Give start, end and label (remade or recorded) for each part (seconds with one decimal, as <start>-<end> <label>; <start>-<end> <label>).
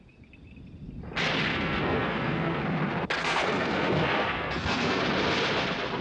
0.0-1.5 recorded; 1.5-2.6 remade; 2.6-3.2 recorded; 3.2-5.0 remade; 5.0-6.0 recorded